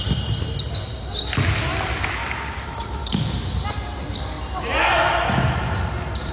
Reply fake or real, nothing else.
real